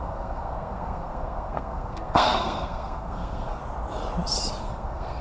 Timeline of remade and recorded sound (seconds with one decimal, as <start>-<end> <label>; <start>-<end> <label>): 0.0-3.6 remade; 3.6-4.6 recorded; 4.6-5.2 remade